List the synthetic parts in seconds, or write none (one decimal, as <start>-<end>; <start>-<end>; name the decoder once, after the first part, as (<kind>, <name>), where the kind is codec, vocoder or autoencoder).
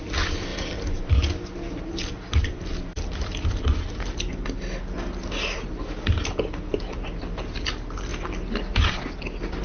none